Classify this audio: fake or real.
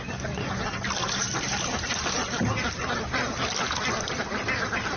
fake